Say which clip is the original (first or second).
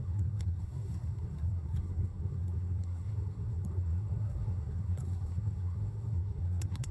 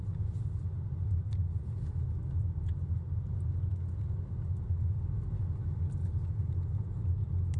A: second